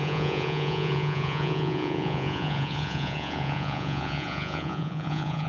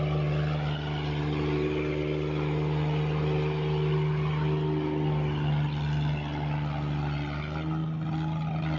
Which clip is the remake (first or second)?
first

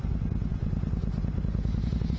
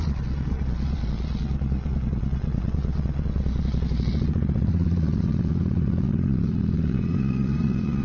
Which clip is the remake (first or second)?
second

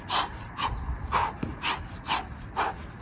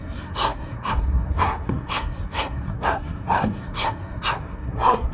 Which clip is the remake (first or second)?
second